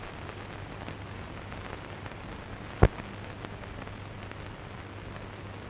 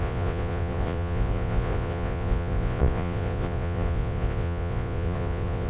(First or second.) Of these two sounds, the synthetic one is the second